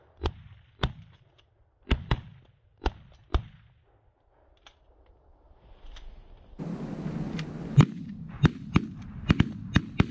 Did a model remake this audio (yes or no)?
no